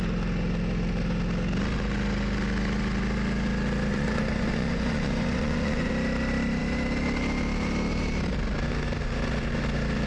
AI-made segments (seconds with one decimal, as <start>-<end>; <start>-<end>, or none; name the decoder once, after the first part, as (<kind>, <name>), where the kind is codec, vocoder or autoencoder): 3.9-5.9 (vocoder, Vocos)